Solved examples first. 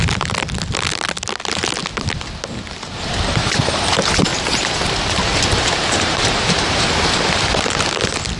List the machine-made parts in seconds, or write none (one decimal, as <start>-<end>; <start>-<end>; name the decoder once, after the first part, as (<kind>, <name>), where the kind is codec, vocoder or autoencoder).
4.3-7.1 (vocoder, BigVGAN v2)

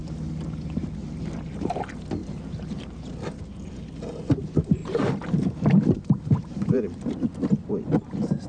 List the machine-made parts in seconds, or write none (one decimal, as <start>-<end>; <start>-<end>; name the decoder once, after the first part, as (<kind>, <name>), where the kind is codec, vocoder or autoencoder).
1.0-1.8 (vocoder, BigVGAN v2); 2.2-3.1; 4.8-7.1

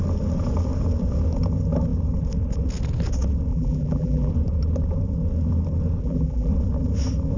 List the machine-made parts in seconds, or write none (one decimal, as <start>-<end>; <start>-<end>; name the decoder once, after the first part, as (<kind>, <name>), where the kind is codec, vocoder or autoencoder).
3.5-4.3 (vocoder, BigVGAN v2); 6.0-6.5

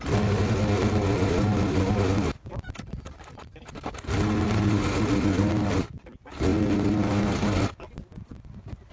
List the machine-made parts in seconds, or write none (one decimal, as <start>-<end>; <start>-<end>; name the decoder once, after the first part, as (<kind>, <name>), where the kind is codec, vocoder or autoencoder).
none

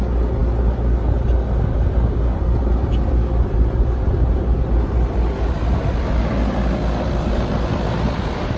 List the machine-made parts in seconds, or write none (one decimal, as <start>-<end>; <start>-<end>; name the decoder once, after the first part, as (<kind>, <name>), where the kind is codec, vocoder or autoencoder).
none

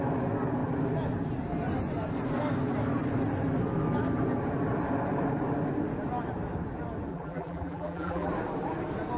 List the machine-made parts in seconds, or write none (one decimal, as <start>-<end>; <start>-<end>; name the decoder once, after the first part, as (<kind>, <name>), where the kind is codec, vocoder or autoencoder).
7.1-8.3 (vocoder, BigVGAN v2)

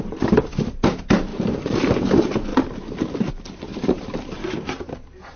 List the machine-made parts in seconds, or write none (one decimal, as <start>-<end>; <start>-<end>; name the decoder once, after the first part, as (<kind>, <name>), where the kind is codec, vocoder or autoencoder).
1.3-2.1 (vocoder, BigVGAN v2); 3.7-4.4